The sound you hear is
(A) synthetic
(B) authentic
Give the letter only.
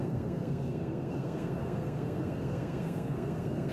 A